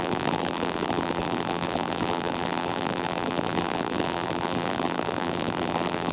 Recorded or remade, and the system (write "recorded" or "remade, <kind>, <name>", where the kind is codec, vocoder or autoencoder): remade, vocoder, BigVGAN v2